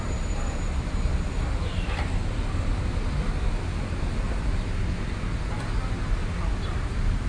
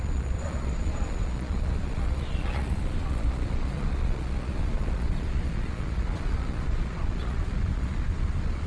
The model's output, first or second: second